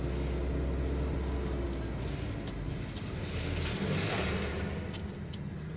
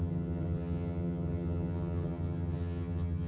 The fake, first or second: second